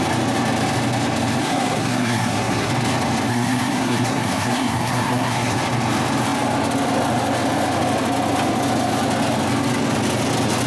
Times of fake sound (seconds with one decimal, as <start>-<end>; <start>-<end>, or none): 1.4-2.7; 3.3-5.6